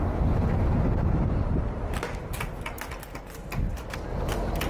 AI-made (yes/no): no